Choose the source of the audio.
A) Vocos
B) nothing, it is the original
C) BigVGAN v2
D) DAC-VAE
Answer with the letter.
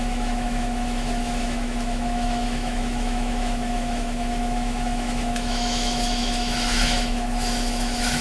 D